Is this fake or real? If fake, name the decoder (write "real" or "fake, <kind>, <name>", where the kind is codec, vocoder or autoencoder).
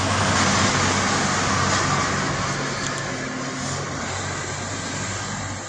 real